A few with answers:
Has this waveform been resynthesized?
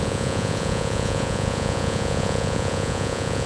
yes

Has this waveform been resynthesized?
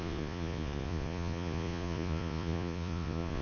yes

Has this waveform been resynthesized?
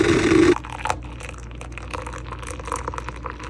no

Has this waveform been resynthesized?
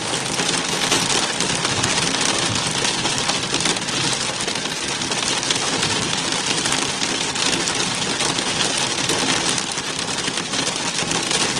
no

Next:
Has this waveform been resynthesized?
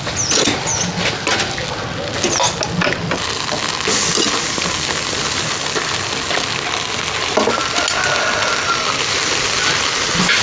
no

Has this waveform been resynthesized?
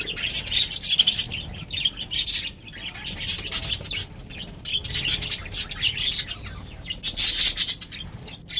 no